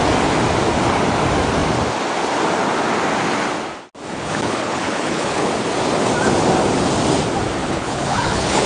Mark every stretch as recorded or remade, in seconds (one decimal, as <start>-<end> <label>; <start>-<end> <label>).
0.0-4.1 recorded; 4.1-5.5 remade; 5.5-7.6 recorded; 7.6-8.7 remade